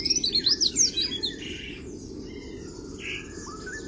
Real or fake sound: real